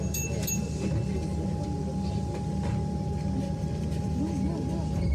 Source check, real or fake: real